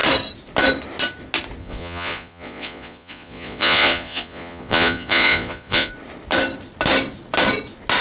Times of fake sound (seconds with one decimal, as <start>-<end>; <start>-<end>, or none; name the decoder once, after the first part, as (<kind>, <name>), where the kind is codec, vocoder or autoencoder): 1.6-5.9 (vocoder, Vocos)